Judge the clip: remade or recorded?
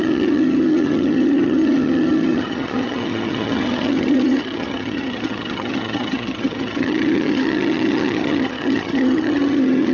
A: remade